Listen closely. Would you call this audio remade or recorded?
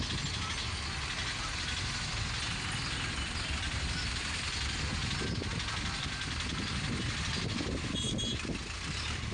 recorded